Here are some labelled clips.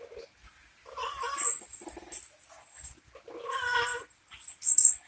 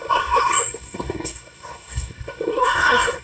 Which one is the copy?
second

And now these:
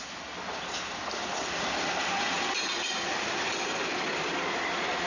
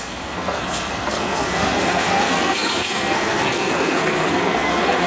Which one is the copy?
second